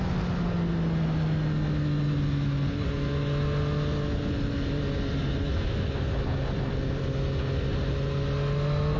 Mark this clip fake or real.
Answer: real